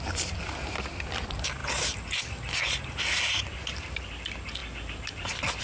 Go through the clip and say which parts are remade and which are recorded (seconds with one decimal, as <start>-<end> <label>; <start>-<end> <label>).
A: 0.0-5.6 recorded